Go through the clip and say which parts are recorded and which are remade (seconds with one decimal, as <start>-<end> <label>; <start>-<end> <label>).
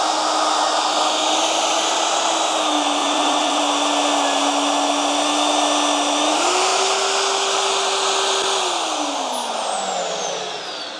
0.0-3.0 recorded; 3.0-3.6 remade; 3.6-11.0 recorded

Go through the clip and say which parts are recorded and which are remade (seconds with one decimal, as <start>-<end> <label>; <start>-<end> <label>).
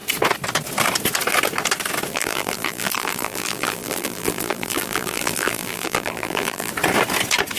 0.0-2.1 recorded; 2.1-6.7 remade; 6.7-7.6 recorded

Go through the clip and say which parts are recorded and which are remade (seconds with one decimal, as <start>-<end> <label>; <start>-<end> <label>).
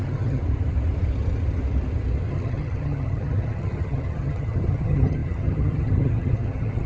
0.0-0.4 remade; 0.4-2.3 recorded; 2.3-6.9 remade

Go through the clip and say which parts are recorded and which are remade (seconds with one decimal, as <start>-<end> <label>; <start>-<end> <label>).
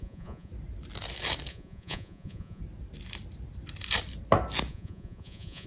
0.0-0.5 remade; 0.5-1.5 recorded; 1.5-2.6 remade; 2.6-4.7 recorded; 4.7-5.7 remade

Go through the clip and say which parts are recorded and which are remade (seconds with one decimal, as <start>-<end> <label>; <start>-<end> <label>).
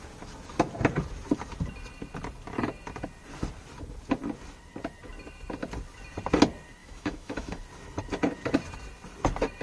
0.0-6.8 recorded; 6.8-7.6 remade; 7.6-9.6 recorded